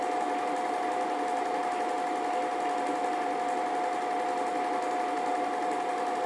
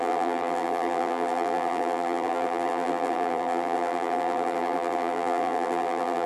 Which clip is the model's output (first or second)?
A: second